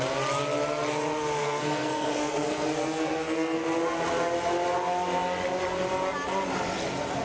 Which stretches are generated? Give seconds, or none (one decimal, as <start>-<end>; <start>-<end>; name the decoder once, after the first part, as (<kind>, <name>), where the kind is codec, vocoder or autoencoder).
1.4-3.8 (codec, SNAC)